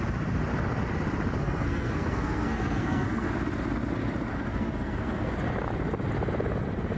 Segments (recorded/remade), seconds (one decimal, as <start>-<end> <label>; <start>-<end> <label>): 0.0-1.4 recorded; 1.4-3.3 remade; 3.3-4.5 recorded; 4.5-5.3 remade; 5.3-7.0 recorded